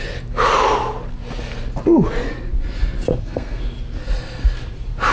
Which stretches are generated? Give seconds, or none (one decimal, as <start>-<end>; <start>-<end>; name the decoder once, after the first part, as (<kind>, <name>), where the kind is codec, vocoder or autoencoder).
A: 3.1-3.6 (codec, SNAC)